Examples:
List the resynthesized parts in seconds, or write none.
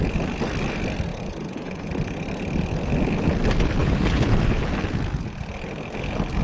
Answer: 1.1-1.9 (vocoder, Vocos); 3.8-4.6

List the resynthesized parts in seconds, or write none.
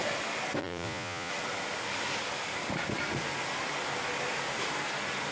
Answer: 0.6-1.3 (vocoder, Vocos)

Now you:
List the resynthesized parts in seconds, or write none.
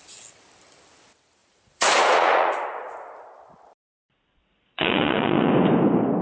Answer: 1.4-2.5 (vocoder, Vocos); 4.4-5.5